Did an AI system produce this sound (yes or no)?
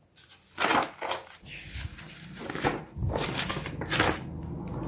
no